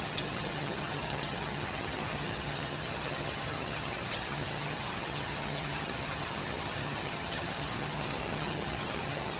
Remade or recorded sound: remade